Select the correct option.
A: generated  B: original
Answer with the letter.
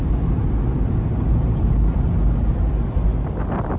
B